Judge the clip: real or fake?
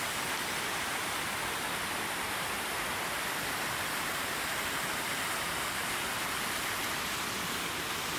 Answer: real